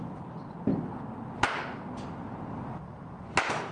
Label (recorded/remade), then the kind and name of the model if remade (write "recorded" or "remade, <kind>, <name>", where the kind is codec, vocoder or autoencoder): recorded